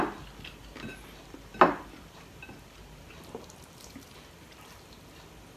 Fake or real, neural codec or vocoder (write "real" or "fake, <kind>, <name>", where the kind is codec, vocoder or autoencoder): real